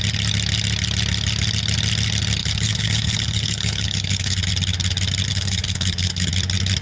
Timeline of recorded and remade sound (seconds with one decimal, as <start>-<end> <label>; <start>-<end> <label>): 0.0-2.4 recorded; 2.4-4.5 remade; 4.5-5.3 recorded; 5.3-6.3 remade; 6.3-6.8 recorded